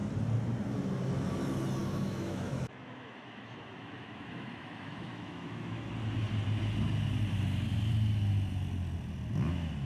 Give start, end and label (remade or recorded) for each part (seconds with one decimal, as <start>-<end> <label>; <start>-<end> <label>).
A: 0.0-1.8 recorded; 1.8-5.9 remade; 5.9-9.9 recorded